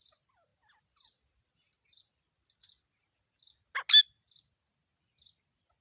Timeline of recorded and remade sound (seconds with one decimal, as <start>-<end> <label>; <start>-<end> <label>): 0.0-5.8 recorded

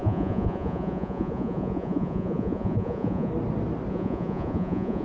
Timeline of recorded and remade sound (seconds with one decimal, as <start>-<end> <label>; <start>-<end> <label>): 0.0-3.3 remade; 3.3-3.9 recorded; 3.9-5.0 remade

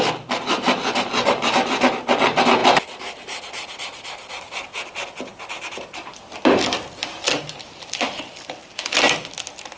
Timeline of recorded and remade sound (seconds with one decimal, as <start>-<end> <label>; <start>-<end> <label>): 0.0-7.0 recorded; 7.0-8.2 remade; 8.2-9.8 recorded